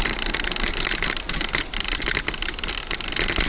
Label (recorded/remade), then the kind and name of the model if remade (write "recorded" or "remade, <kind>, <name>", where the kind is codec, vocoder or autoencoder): recorded